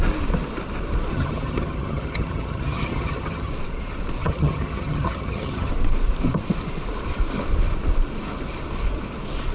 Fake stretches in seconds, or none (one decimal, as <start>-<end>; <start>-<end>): 1.1-3.5; 4.2-5.7